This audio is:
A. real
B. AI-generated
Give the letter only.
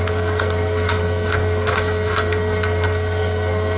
B